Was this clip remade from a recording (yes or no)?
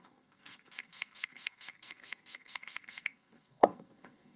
yes